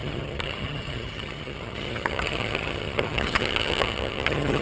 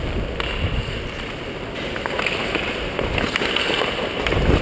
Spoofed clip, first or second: first